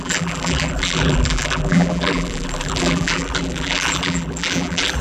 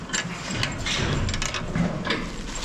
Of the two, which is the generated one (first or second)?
first